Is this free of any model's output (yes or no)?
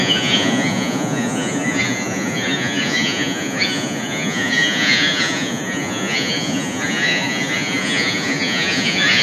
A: no